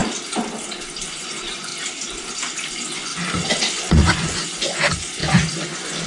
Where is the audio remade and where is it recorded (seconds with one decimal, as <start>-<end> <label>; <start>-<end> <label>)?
0.0-1.0 recorded; 1.0-1.7 remade; 1.7-2.7 recorded; 2.7-3.1 remade; 3.1-3.7 recorded; 3.7-6.1 remade